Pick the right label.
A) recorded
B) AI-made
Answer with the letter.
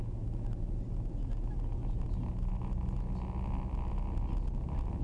A